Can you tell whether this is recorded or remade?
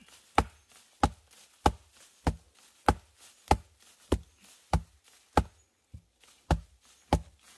recorded